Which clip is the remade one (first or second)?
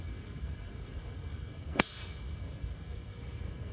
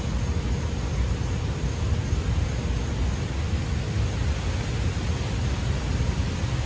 first